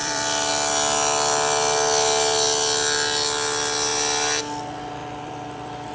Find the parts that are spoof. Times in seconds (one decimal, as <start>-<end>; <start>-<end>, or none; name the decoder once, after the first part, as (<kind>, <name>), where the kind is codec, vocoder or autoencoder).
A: 0.0-0.5 (vocoder, BigVGAN v2); 5.0-5.9